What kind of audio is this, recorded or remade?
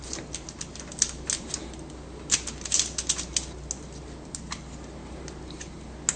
recorded